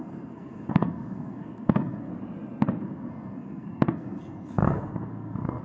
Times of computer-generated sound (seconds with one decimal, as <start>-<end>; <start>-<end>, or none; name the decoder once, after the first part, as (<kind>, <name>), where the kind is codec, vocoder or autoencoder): 0.0-2.1 (codec, SNAC); 2.8-5.6